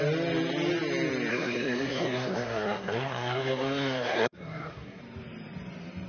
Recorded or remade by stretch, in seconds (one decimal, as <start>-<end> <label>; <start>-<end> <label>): 0.0-1.3 recorded; 1.3-5.0 remade; 5.0-6.1 recorded